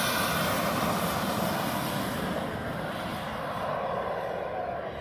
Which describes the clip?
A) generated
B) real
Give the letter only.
B